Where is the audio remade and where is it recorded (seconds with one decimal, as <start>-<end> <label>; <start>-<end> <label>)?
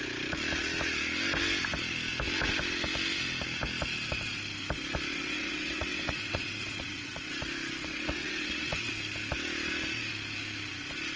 0.0-5.1 recorded; 5.1-7.3 remade; 7.3-7.8 recorded; 7.8-8.9 remade; 8.9-11.2 recorded